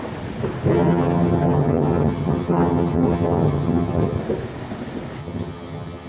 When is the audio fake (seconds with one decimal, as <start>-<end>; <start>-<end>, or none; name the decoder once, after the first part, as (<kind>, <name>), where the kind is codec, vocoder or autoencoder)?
0.7-4.2 (vocoder, HiFi-GAN); 5.2-6.1